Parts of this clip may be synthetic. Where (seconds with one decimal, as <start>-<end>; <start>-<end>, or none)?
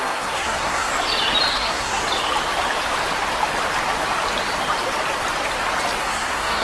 0.0-0.9; 1.5-2.0; 6.0-6.6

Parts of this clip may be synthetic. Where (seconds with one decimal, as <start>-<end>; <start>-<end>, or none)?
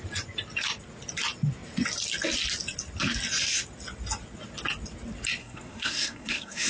5.4-6.7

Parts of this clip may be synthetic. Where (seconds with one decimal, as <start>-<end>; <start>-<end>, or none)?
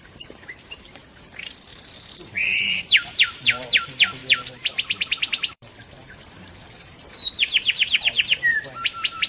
0.0-1.7; 2.3-9.3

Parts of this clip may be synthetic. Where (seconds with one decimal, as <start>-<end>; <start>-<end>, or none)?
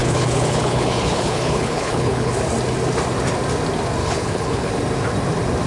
0.0-2.3; 4.0-4.7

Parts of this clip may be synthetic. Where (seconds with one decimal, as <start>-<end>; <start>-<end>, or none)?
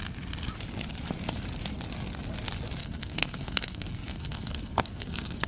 2.8-5.5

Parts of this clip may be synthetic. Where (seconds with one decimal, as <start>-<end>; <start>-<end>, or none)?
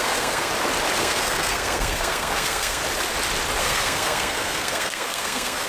0.0-0.5; 1.0-2.8; 3.6-5.7